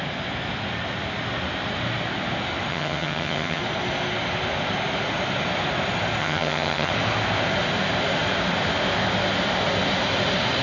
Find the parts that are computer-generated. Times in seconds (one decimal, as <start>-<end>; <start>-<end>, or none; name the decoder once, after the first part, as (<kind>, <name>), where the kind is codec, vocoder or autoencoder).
2.7-3.6 (vocoder, HiFi-GAN); 6.2-6.9